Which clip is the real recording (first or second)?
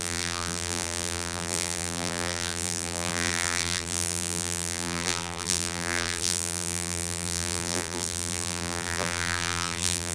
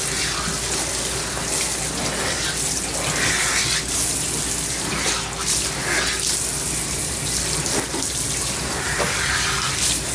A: second